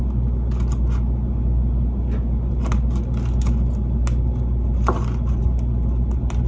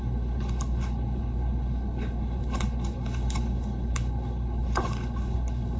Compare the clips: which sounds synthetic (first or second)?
second